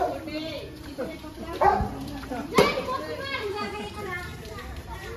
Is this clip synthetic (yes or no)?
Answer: yes